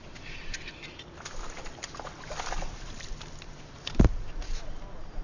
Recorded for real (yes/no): yes